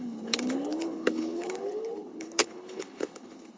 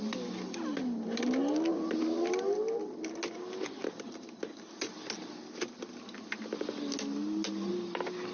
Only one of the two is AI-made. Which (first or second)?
first